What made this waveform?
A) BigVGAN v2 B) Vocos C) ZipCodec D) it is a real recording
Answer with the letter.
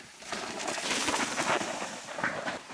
A